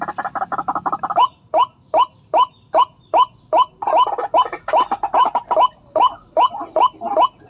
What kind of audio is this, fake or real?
real